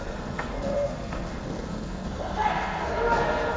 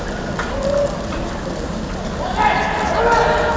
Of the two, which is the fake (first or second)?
first